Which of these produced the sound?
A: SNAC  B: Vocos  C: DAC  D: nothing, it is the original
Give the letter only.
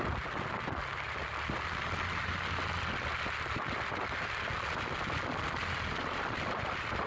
D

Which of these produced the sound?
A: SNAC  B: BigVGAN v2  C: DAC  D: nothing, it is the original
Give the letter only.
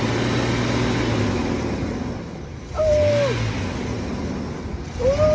D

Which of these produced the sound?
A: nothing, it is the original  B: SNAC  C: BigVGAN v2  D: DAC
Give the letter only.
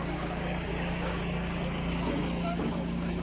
D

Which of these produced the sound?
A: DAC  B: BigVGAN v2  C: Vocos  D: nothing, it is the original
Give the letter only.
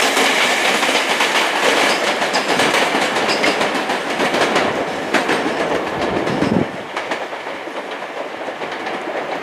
D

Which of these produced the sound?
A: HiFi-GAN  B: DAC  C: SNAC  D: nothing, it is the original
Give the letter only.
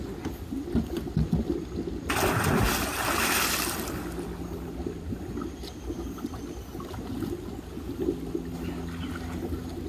D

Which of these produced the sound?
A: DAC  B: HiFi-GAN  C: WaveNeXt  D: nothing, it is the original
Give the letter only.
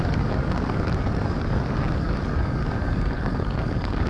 A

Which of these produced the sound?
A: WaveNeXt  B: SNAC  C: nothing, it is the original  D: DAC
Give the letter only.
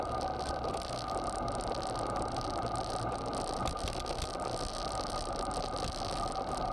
C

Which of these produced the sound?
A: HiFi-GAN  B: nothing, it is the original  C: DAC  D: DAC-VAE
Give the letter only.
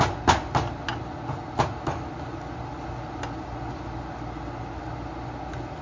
B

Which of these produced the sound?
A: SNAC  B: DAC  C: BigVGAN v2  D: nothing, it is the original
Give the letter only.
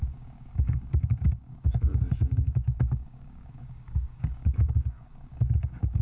B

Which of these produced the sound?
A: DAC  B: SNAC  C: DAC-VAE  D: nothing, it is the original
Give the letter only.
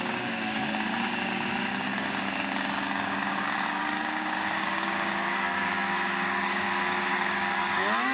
A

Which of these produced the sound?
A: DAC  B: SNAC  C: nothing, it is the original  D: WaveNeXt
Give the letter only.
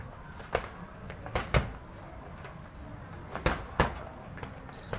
C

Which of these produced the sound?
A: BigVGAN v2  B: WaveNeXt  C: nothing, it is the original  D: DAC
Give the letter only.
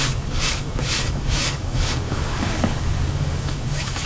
D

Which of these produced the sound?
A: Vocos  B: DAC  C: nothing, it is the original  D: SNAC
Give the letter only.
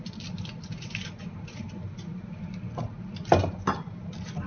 C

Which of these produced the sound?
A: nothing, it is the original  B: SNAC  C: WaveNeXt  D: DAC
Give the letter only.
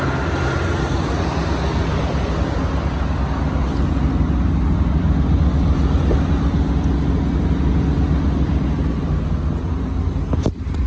A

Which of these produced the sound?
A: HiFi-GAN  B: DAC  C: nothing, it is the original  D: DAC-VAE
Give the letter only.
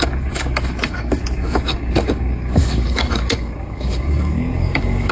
B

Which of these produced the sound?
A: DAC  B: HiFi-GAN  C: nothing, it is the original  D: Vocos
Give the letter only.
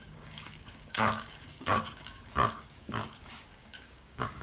A